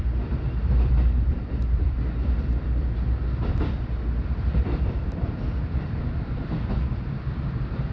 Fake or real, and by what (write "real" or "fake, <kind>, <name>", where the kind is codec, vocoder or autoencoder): fake, vocoder, BigVGAN v2